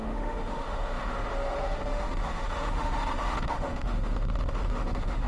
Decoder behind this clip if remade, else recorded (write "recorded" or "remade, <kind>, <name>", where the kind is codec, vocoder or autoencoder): remade, autoencoder, DAC-VAE